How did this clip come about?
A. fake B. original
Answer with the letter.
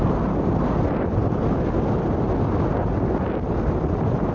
B